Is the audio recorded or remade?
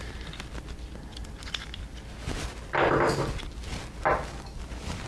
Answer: recorded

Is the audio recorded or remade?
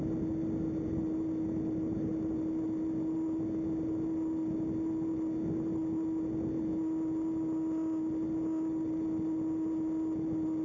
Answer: recorded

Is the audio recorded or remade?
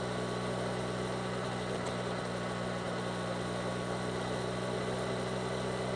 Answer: recorded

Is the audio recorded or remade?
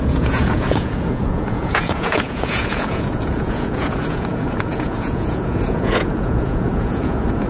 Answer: remade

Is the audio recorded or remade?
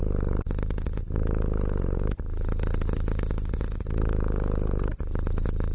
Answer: recorded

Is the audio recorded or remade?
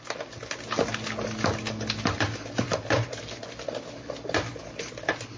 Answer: recorded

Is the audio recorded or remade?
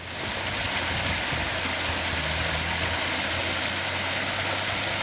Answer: recorded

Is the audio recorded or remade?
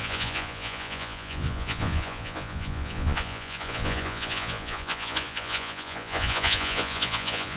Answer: remade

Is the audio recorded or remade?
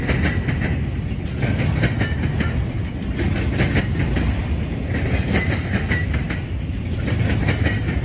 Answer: recorded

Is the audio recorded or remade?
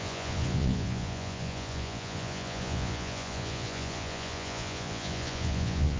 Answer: remade